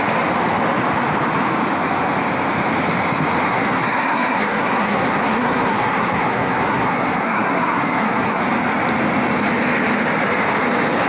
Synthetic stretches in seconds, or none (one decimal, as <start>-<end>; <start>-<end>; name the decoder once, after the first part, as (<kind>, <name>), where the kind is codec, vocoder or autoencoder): 3.5-8.4 (codec, SNAC)